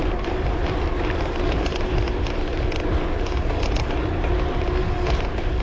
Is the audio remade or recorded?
recorded